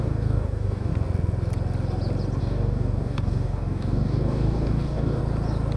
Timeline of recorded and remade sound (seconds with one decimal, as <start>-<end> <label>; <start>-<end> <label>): 0.0-0.9 remade; 0.9-2.4 recorded; 2.4-5.2 remade; 5.2-5.8 recorded